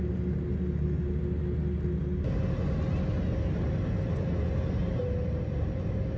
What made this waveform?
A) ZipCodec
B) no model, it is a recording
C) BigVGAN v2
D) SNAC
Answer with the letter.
B